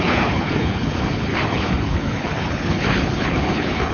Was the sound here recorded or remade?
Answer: remade